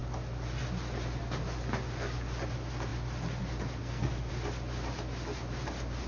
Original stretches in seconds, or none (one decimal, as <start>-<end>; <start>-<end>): 0.0-3.8; 4.3-6.1